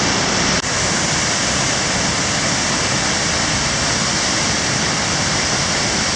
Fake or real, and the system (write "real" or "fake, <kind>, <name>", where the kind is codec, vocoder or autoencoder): real